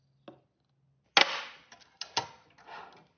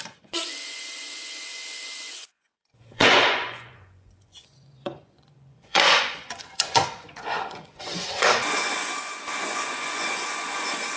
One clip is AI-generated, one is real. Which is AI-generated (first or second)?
second